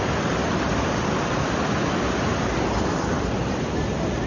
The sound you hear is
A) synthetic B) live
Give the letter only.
B